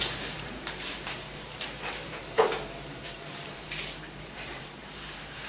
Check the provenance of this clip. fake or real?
fake